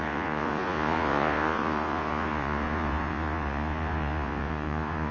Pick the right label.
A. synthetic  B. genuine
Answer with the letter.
A